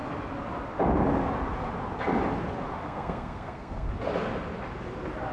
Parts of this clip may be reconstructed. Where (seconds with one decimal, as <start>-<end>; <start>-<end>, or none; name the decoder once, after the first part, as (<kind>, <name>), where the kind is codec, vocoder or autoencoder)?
2.8-3.9 (codec, SNAC)